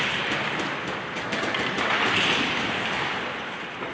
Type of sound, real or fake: real